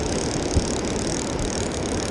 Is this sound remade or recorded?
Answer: recorded